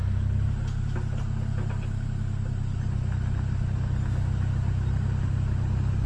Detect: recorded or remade recorded